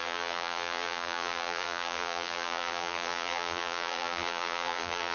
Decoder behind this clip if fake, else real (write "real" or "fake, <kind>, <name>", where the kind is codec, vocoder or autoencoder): fake, vocoder, BigVGAN v2